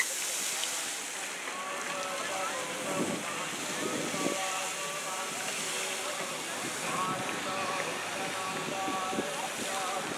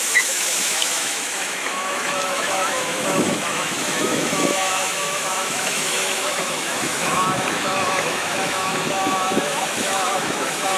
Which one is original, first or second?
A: first